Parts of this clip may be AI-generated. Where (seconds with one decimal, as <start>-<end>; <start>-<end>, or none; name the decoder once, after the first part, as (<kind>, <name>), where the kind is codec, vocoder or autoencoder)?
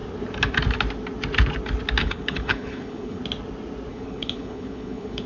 2.0-3.2 (codec, HILCodec); 3.9-5.3